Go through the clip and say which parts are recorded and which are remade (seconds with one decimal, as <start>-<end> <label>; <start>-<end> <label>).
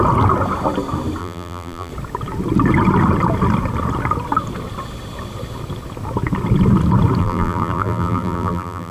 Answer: 0.0-1.2 recorded; 1.2-1.9 remade; 1.9-7.2 recorded; 7.2-8.9 remade